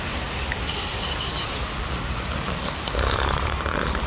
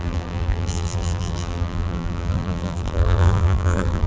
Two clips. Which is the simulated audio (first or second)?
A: second